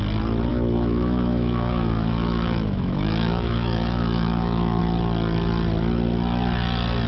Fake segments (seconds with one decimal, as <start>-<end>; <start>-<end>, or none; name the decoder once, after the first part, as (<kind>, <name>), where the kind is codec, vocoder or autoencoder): 0.5-4.8 (autoencoder, DAC-VAE)